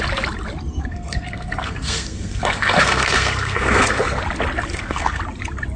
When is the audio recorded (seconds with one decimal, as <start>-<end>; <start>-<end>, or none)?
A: 0.0-0.7; 4.2-4.7; 5.2-5.8

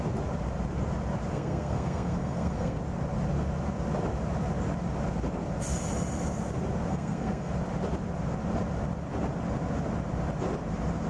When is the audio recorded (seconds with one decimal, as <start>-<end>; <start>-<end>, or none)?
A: 0.0-1.3; 2.8-6.9; 7.5-11.1